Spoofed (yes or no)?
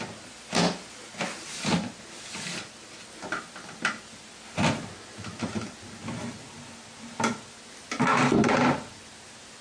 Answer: no